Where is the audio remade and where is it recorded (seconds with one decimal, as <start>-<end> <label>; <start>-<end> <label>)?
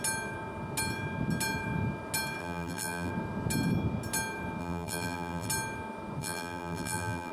0.0-2.4 recorded; 2.4-3.1 remade; 3.1-4.6 recorded; 4.6-5.5 remade; 5.5-6.2 recorded; 6.2-7.3 remade